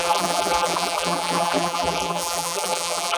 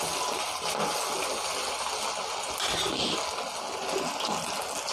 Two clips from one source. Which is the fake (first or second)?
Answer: first